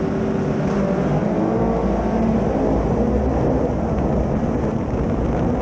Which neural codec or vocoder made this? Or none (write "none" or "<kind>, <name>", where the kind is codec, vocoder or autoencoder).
none